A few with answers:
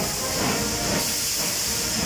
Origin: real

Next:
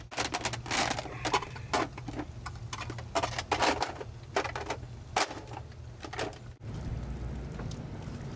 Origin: real